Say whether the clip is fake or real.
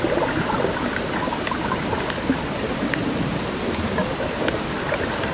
real